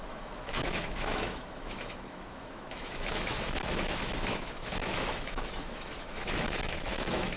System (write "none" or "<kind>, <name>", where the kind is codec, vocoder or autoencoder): autoencoder, DAC-VAE